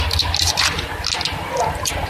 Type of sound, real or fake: real